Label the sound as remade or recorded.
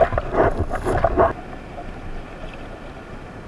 recorded